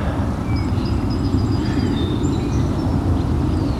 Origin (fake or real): real